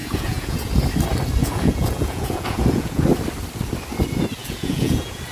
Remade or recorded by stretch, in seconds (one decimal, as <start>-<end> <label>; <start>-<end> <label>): 0.0-0.7 remade; 0.7-1.4 recorded; 1.4-3.0 remade; 3.0-4.4 recorded; 4.4-5.3 remade